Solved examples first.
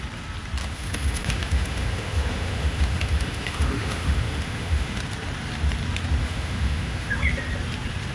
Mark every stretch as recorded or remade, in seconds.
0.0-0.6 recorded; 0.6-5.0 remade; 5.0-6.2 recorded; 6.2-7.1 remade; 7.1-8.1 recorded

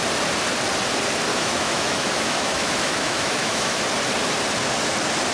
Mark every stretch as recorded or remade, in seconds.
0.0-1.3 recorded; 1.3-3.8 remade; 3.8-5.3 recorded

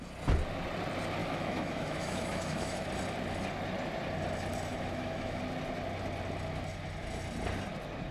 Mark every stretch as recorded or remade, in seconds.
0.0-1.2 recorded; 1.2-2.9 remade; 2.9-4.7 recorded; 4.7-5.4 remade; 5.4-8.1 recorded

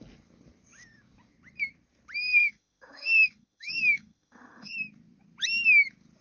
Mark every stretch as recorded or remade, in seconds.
0.0-2.3 recorded; 2.3-4.7 remade; 4.7-6.2 recorded